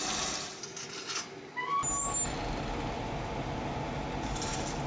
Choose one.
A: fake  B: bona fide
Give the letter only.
B